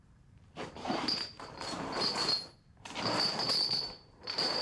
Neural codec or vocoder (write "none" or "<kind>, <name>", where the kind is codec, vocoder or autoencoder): vocoder, BigVGAN v2